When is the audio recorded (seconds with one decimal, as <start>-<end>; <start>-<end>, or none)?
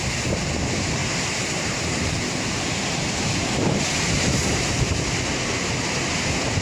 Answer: 0.0-1.0; 4.7-6.6